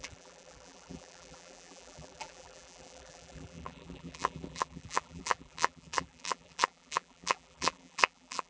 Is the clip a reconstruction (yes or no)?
yes